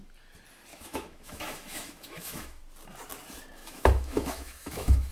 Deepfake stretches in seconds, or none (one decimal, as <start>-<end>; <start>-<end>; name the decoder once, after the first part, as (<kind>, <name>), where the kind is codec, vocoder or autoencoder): 0.7-2.6 (autoencoder, DAC-VAE); 3.6-5.1